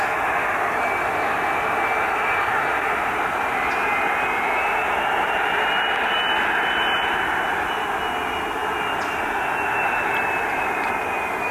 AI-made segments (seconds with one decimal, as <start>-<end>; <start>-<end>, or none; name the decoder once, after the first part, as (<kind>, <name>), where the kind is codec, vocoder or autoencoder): 2.7-3.6 (vocoder, BigVGAN v2)